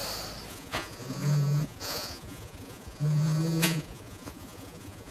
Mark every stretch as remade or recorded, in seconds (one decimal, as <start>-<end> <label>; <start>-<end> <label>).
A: 0.0-0.5 recorded; 0.5-5.1 remade